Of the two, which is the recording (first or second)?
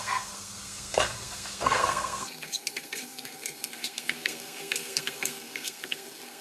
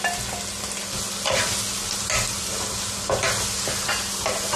second